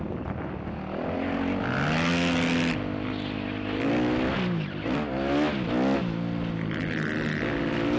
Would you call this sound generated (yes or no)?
no